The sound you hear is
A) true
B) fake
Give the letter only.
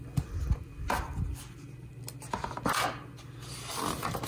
A